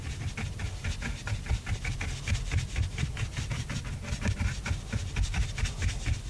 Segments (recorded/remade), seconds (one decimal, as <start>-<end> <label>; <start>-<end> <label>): 0.0-2.9 recorded; 2.9-3.8 remade; 3.8-5.0 recorded; 5.0-5.8 remade; 5.8-6.3 recorded